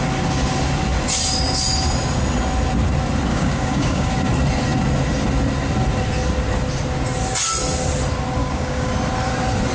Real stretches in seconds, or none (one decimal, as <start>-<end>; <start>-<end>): 0.0-3.3; 4.1-8.4; 8.9-9.7